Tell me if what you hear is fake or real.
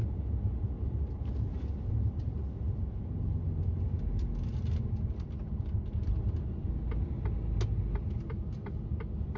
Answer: real